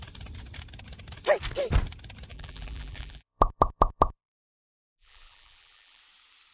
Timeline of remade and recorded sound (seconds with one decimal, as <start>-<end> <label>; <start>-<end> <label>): 0.0-2.3 recorded; 2.3-6.0 remade; 6.0-6.5 recorded